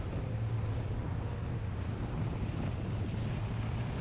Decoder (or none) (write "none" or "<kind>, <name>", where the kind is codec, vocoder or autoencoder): none